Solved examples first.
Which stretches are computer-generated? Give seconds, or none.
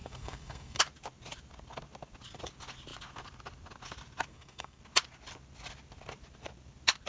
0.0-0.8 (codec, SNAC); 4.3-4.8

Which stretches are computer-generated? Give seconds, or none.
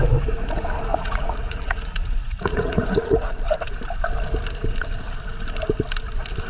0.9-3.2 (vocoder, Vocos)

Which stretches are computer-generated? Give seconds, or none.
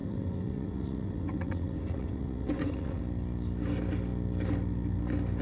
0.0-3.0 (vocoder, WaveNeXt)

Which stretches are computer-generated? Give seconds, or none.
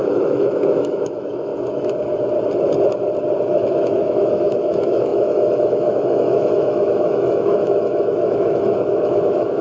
0.0-1.5 (autoencoder, DAC-VAE); 3.7-9.6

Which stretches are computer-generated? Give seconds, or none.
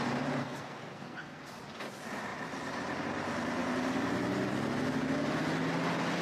0.4-1.5 (codec, SNAC)